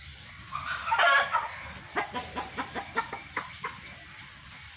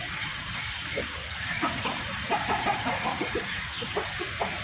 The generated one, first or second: second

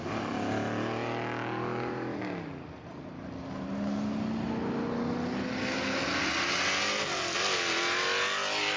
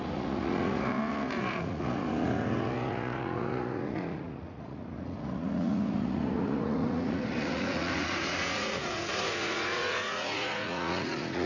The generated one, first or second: second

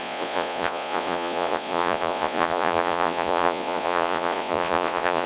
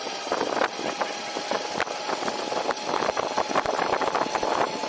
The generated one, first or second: first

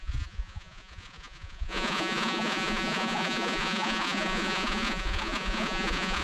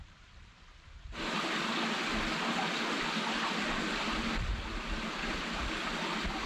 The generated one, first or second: first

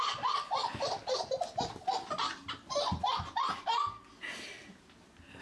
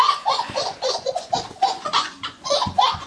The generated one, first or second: second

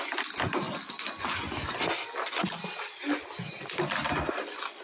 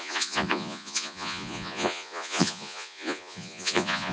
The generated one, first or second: second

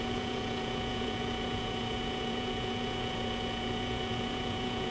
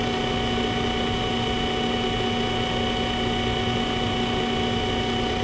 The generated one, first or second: first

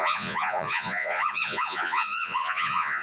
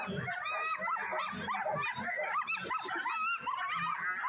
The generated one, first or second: first